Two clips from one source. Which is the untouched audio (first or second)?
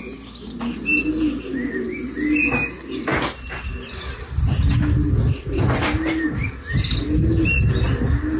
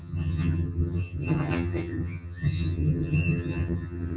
first